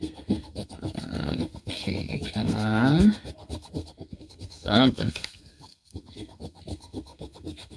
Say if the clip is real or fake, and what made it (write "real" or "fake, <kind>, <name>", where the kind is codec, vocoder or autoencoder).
fake, codec, SNAC